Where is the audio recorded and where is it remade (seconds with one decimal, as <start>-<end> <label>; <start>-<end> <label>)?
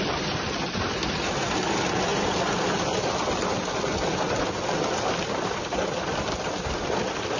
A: 0.0-7.4 recorded